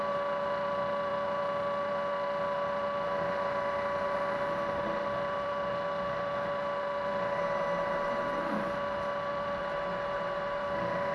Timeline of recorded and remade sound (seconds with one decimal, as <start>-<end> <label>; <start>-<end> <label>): 0.0-7.4 remade; 7.4-8.4 recorded; 8.4-9.6 remade; 9.6-10.6 recorded; 10.6-11.1 remade